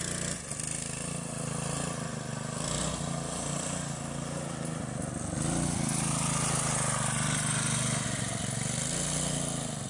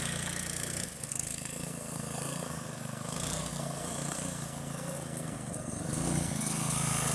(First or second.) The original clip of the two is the first